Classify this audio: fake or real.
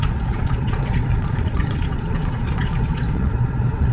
fake